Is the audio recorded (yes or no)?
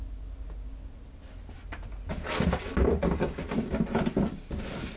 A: yes